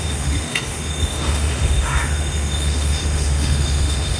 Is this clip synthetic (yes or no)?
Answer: yes